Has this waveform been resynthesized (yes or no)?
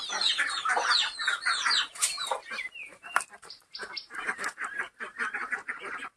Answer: yes